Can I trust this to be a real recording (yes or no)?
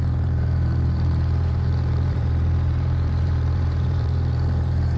no